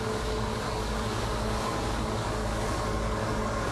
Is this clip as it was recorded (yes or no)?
no